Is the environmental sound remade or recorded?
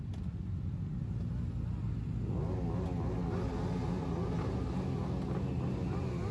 recorded